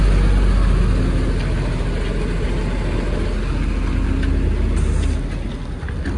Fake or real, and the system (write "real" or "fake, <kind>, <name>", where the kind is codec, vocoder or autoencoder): real